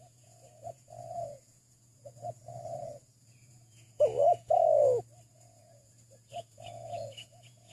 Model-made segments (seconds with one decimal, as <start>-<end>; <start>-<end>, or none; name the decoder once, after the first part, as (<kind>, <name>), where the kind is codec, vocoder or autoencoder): 0.0-4.7 (vocoder, Vocos); 5.3-7.7

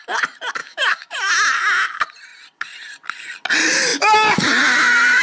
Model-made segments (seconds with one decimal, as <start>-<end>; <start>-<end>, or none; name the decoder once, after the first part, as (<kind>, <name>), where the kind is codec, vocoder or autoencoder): 0.6-1.3 (autoencoder, DAC-VAE)